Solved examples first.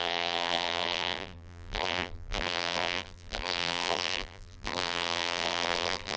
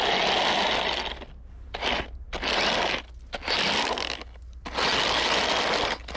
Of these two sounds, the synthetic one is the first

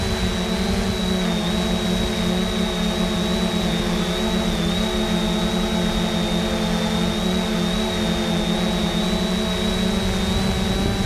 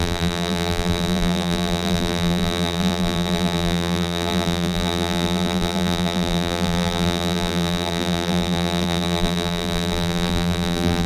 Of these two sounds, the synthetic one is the second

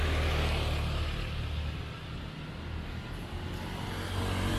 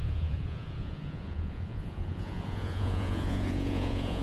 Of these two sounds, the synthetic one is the second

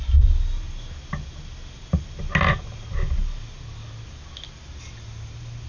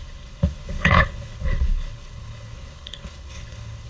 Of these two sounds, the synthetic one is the second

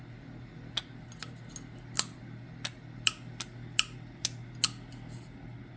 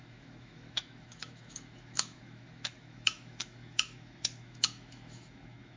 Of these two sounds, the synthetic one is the second